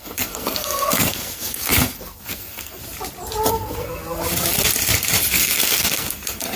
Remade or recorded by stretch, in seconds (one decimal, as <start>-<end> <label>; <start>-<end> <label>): 0.0-2.8 remade; 2.8-3.5 recorded; 3.5-3.9 remade; 3.9-5.3 recorded; 5.3-6.5 remade